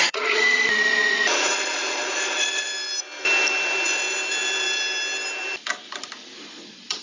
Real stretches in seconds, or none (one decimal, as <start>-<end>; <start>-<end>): 2.7-6.4